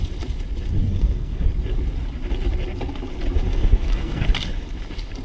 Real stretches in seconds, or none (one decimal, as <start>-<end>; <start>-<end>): 0.0-0.8; 1.5-3.5; 4.2-5.2